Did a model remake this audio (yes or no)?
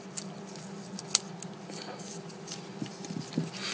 no